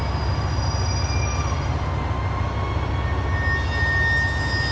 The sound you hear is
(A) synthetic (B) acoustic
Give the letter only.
B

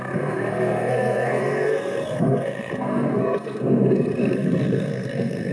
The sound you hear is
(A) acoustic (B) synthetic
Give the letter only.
B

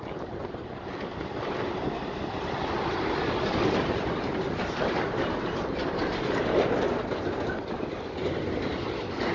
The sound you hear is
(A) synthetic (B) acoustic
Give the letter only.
B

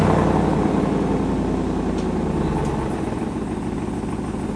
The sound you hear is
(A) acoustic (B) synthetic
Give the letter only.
A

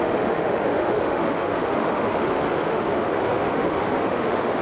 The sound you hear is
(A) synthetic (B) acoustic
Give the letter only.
A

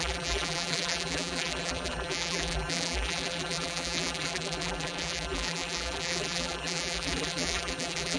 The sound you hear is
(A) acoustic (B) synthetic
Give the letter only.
B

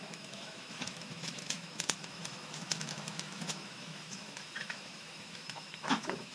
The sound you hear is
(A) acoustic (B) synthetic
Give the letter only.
B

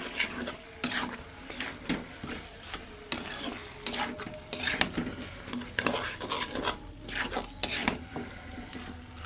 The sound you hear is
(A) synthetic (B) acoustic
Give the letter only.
B